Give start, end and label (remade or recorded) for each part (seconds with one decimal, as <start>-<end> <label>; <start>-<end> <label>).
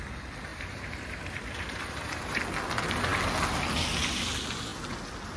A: 0.0-0.5 recorded; 0.5-2.4 remade; 2.4-5.4 recorded